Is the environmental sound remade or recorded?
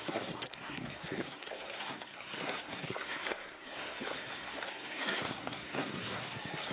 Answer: remade